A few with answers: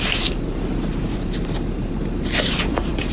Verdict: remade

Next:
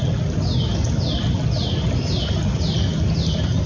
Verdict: recorded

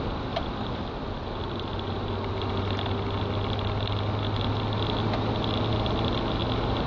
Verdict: recorded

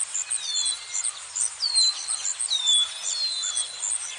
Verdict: recorded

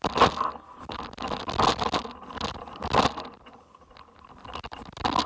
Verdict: recorded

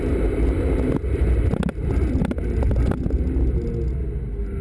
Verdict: recorded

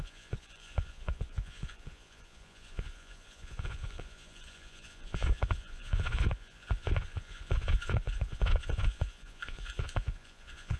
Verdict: remade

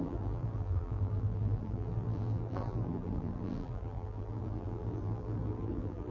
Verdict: remade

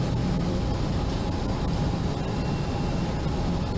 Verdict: recorded